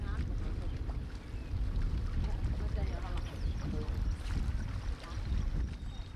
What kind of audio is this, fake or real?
real